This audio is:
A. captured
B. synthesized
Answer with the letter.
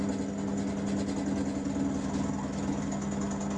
A